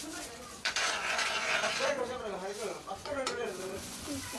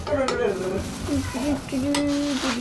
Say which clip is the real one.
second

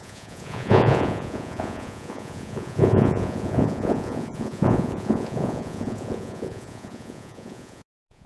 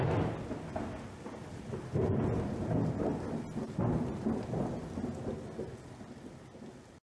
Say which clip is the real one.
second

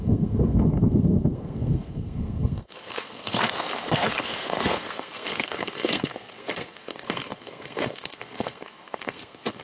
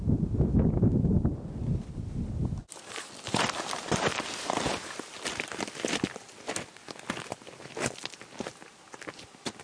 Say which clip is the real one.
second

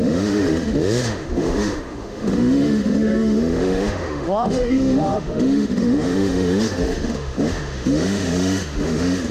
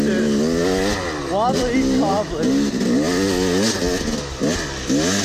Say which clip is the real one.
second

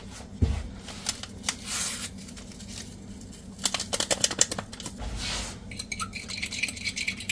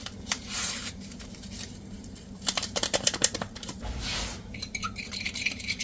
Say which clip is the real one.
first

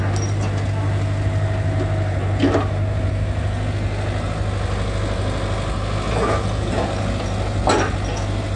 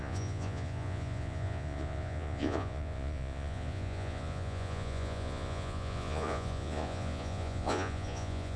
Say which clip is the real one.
first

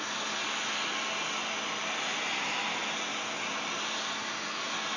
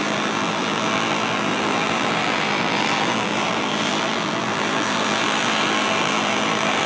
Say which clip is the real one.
first